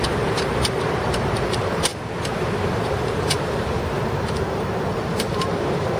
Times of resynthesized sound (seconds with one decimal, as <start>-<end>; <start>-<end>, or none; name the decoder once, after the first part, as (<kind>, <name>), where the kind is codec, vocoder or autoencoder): 0.0-3.8 (vocoder, BigVGAN v2); 5.0-6.0